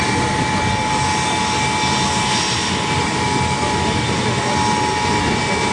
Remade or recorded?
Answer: recorded